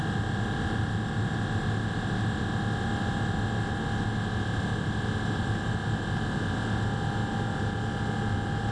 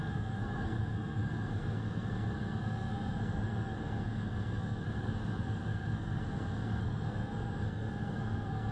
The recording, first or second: first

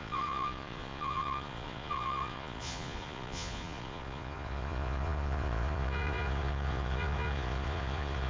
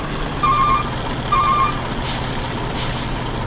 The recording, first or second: second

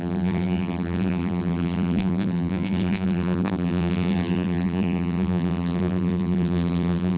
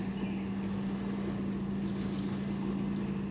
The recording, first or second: second